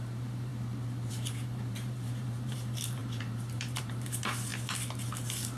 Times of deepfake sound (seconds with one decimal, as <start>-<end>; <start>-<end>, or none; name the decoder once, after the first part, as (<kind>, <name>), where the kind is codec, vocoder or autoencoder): 0.0-0.5 (vocoder, BigVGAN v2); 1.1-4.5